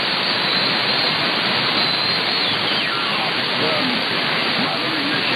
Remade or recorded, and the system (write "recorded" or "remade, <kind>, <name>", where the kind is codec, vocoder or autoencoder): remade, vocoder, BigVGAN v2